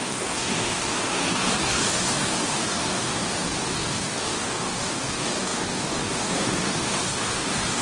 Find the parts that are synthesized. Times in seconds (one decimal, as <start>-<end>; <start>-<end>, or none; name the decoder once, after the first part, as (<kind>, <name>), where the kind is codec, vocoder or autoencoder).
0.0-7.8 (codec, DAC)